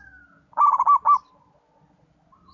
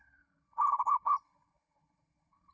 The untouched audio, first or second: first